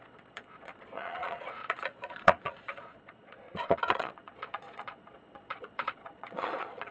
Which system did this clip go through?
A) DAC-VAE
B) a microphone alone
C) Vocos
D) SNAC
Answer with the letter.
C